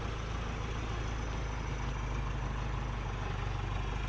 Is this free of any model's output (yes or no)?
yes